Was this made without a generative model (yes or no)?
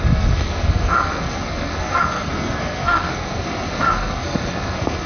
no